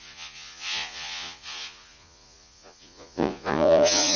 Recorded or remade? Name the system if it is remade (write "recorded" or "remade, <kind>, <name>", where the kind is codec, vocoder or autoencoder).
remade, vocoder, Vocos